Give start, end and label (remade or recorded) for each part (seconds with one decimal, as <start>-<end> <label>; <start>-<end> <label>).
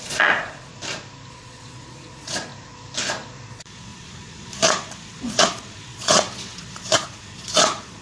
0.0-0.7 remade; 0.7-1.3 recorded; 1.3-2.5 remade; 2.5-3.5 recorded; 3.5-8.0 remade